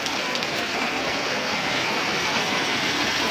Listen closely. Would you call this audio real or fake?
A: fake